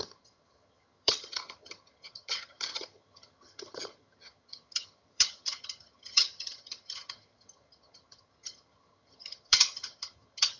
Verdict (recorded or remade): remade